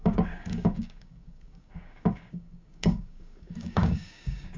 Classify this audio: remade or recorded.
remade